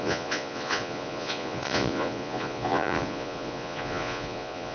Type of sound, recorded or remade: remade